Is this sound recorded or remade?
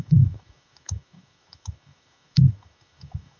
remade